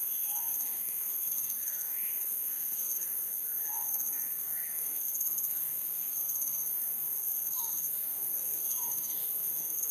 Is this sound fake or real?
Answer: fake